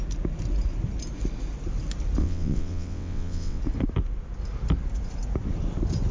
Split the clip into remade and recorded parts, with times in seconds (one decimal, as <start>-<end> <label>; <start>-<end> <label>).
0.0-2.2 recorded; 2.2-3.6 remade; 3.6-6.1 recorded